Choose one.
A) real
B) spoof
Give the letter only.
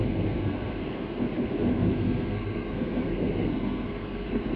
B